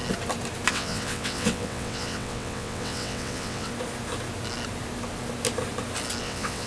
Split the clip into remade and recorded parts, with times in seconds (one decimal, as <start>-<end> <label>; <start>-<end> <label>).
0.0-0.7 recorded; 0.7-3.7 remade; 3.7-6.2 recorded; 6.2-6.7 remade